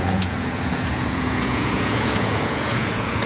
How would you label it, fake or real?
fake